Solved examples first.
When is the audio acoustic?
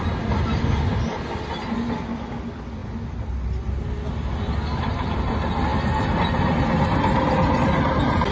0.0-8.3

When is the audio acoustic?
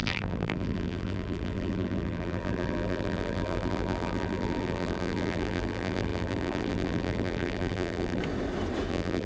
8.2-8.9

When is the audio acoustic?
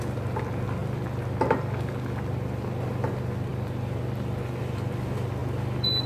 0.0-5.4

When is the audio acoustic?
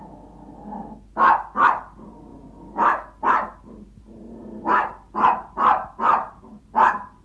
0.0-2.3; 6.6-7.2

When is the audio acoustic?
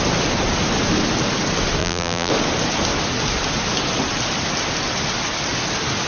0.0-1.8; 2.3-6.1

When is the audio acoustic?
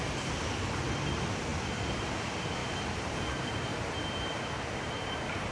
0.0-2.6; 3.2-3.7; 5.1-5.5